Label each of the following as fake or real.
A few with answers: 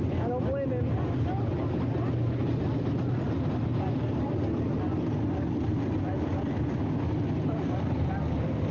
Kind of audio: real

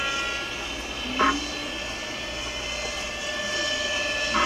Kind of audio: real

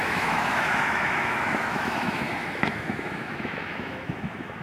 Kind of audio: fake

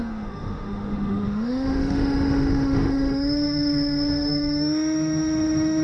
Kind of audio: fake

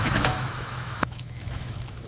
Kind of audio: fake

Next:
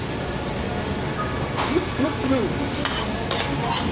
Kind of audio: real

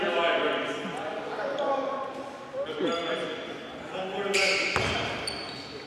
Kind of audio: real